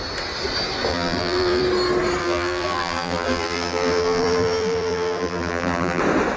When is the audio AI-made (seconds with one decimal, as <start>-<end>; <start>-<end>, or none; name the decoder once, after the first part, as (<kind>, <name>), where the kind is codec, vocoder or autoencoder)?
0.9-1.6 (vocoder, BigVGAN v2); 2.2-6.0